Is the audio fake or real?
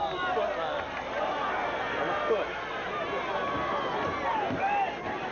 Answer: real